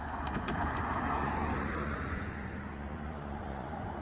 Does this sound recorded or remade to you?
remade